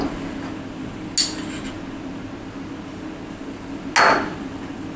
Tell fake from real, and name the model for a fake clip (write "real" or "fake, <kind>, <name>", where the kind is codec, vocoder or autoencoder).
real